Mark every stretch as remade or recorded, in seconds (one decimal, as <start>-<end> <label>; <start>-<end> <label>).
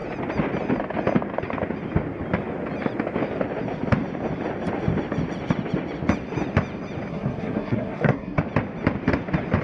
0.0-7.1 recorded; 7.1-8.4 remade; 8.4-9.6 recorded